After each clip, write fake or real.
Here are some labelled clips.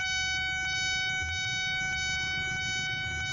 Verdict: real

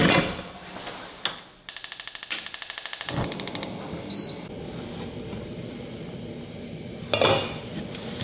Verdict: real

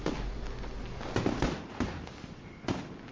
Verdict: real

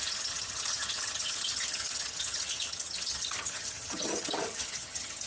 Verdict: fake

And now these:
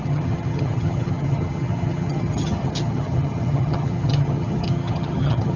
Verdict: fake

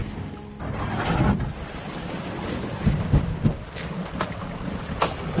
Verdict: real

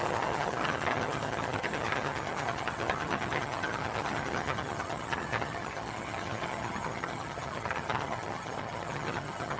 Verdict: fake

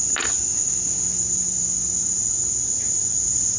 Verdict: real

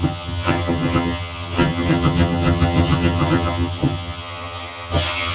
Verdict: fake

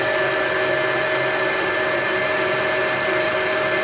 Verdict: real